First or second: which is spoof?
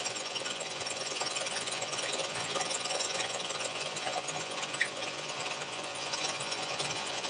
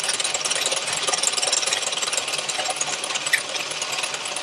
first